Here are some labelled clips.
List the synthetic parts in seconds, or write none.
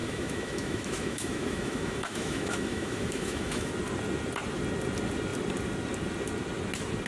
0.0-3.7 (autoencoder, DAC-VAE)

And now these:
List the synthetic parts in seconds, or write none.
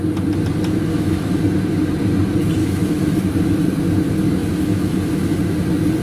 0.9-1.4 (autoencoder, DAC-VAE); 2.6-3.2; 4.4-5.4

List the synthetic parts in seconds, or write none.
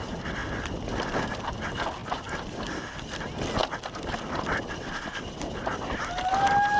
none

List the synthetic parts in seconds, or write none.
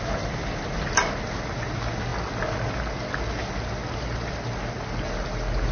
none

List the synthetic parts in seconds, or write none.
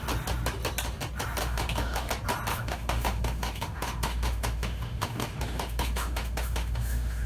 1.4-2.1 (autoencoder, DAC-VAE); 2.5-7.3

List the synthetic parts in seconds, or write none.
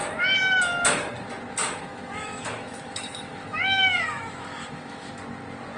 1.6-5.1 (autoencoder, DAC-VAE)